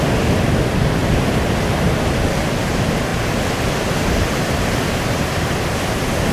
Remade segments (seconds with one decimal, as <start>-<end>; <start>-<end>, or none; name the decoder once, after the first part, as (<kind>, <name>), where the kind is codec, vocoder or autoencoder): 1.0-1.9 (vocoder, BigVGAN v2)